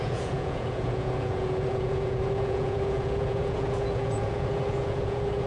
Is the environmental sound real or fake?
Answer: fake